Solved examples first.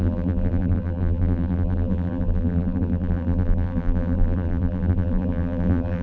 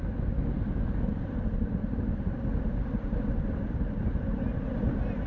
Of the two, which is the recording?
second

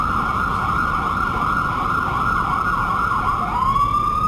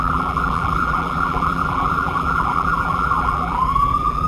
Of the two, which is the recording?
first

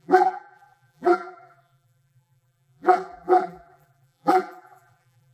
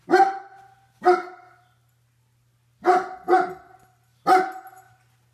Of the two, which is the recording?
second